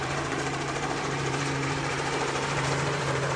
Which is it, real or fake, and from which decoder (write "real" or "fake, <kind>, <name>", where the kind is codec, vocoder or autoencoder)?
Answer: fake, vocoder, BigVGAN v2